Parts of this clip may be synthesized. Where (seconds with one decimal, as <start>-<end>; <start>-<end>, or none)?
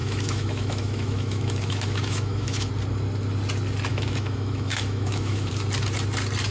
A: 0.0-2.7; 3.9-5.5